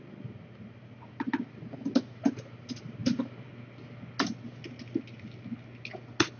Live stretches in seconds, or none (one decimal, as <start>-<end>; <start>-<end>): 0.0-6.4